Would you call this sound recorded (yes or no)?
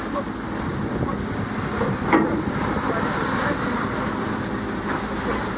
yes